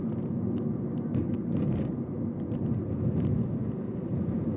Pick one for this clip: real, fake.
real